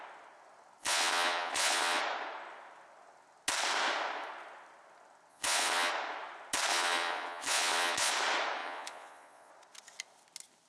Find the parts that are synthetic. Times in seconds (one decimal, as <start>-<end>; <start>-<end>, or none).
0.8-2.0; 5.3-5.9; 6.7-8.1; 8.6-9.5